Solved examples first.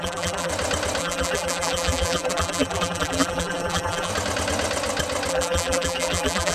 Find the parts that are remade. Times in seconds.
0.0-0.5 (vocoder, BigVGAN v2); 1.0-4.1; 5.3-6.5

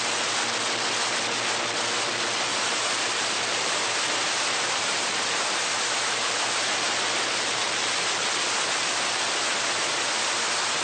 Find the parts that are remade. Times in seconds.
2.5-5.9 (vocoder, BigVGAN v2)

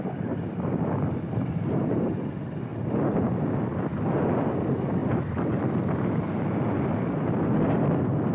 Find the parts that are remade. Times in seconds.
5.0-5.7 (vocoder, BigVGAN v2)

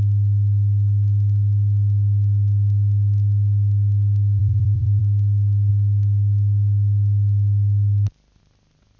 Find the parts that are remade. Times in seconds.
4.4-5.0 (vocoder, BigVGAN v2)